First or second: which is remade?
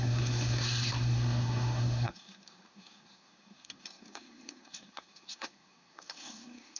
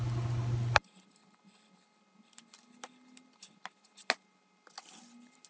first